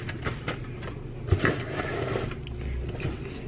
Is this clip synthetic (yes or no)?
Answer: no